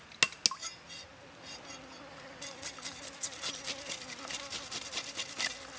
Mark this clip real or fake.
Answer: real